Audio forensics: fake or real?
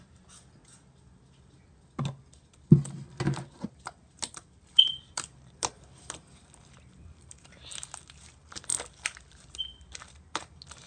real